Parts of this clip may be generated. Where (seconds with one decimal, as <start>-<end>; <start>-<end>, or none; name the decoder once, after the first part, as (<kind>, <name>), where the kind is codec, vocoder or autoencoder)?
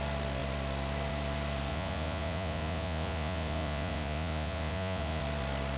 1.7-5.2 (vocoder, Vocos)